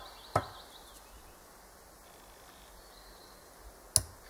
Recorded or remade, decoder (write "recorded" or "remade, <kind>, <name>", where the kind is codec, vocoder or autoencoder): recorded